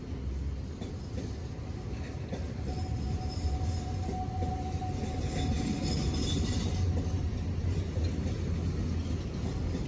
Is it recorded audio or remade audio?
recorded